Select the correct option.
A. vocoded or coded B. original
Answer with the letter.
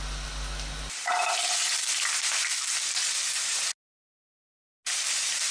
B